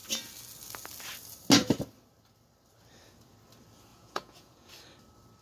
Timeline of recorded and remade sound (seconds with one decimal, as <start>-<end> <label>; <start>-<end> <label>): 0.0-3.9 recorded; 3.9-4.7 remade; 4.7-5.4 recorded